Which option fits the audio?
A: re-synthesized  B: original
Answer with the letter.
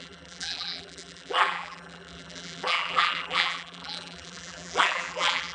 A